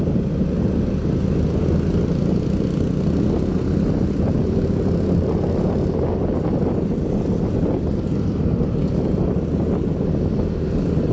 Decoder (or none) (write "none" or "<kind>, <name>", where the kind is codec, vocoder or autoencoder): none